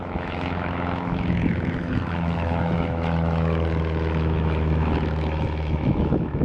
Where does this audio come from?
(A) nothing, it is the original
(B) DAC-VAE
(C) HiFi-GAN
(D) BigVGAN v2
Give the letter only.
B